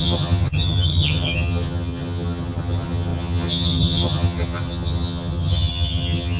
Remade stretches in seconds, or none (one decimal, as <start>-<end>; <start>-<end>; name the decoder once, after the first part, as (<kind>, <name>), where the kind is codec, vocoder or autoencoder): 0.0-6.4 (vocoder, HiFi-GAN)